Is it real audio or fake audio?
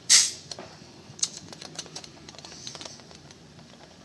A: fake